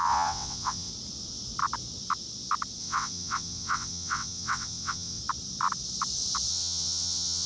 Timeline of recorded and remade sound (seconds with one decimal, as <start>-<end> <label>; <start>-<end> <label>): 0.0-0.9 remade; 0.9-2.8 recorded; 2.8-5.2 remade; 5.2-6.5 recorded; 6.5-7.5 remade